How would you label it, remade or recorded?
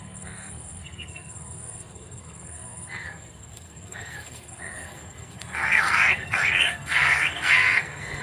remade